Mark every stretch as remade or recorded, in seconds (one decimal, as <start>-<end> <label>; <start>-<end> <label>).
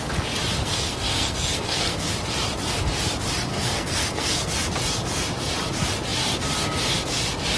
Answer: 0.0-0.6 recorded; 0.6-2.1 remade; 2.1-3.5 recorded; 3.5-4.5 remade; 4.5-7.6 recorded